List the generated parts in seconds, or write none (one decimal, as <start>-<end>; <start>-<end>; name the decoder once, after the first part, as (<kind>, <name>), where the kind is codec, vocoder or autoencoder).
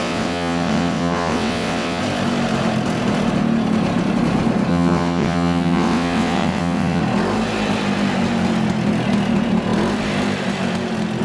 0.0-2.0 (vocoder, WaveNeXt); 4.7-7.0